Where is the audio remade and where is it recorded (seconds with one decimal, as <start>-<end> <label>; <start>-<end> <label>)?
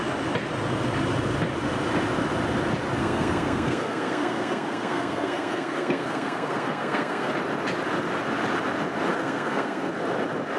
0.0-3.0 recorded; 3.0-7.3 remade; 7.3-9.1 recorded; 9.1-9.9 remade; 9.9-10.6 recorded